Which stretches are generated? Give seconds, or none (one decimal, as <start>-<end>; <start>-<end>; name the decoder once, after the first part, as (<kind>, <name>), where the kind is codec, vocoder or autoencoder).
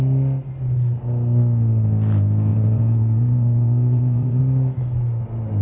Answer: 2.5-4.4 (vocoder, Vocos)